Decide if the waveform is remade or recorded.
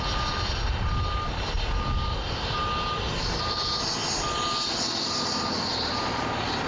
recorded